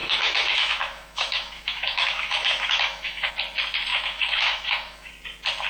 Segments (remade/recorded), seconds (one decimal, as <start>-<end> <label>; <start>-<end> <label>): 0.0-3.3 remade; 3.3-3.9 recorded; 3.9-5.1 remade; 5.1-5.7 recorded